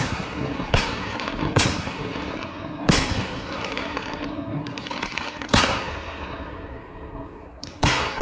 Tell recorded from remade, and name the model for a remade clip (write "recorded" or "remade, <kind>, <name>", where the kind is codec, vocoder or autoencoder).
remade, codec, SNAC